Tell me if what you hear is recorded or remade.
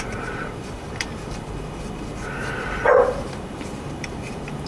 remade